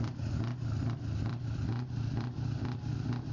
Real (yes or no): no